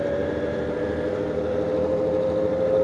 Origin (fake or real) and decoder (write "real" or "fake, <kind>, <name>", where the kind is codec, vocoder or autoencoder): real